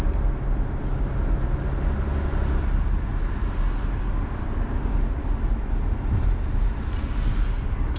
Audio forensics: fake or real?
real